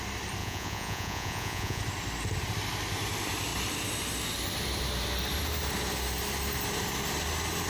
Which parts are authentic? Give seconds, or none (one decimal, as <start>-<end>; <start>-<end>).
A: 0.0-0.4; 1.8-7.7